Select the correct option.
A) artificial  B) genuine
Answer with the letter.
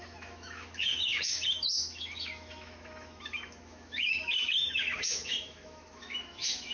A